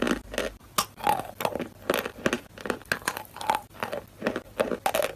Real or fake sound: real